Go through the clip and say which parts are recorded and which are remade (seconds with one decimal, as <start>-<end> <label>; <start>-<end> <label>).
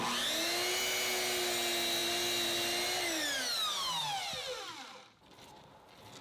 0.0-6.2 recorded